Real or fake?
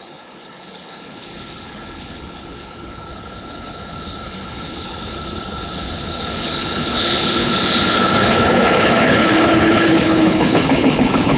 fake